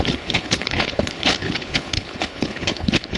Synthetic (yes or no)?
yes